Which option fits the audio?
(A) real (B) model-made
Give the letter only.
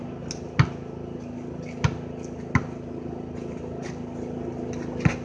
A